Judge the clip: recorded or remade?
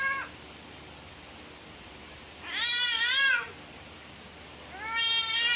recorded